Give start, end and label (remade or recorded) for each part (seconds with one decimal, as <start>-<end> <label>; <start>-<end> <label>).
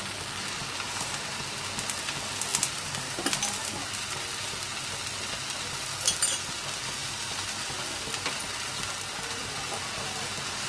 0.0-10.7 recorded